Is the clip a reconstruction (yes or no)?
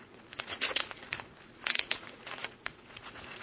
yes